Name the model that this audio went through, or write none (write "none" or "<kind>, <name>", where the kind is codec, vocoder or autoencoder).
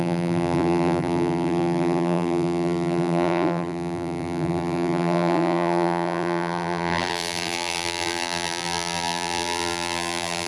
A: vocoder, BigVGAN v2